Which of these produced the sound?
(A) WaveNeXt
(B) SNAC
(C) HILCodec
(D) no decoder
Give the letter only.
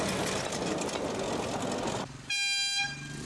D